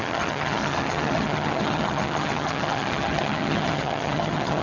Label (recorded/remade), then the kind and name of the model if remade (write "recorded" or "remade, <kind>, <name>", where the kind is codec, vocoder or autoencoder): remade, vocoder, HiFi-GAN